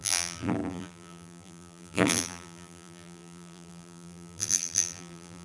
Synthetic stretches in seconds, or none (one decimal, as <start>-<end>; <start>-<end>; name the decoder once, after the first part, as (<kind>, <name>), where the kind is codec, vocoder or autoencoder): 0.0-5.4 (vocoder, BigVGAN v2)